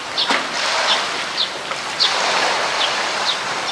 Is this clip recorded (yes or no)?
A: yes